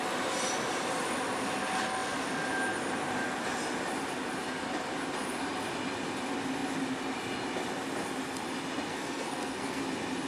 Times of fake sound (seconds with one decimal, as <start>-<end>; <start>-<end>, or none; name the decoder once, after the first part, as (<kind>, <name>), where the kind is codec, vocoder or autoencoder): 8.9-9.8 (codec, SNAC)